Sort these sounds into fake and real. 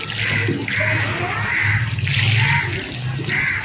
real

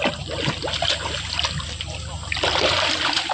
real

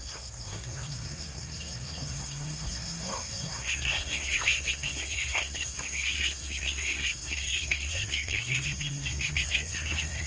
fake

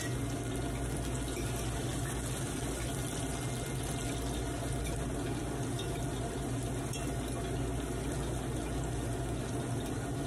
real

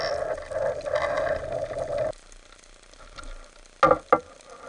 real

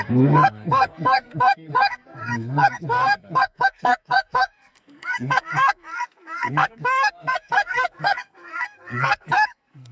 fake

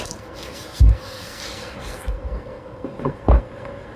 fake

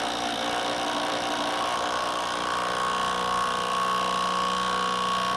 real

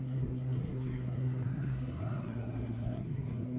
fake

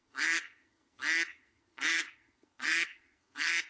fake